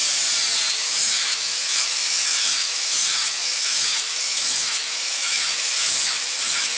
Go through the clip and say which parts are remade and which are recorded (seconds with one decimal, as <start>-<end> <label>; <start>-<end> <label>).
0.0-0.8 recorded; 0.8-6.8 remade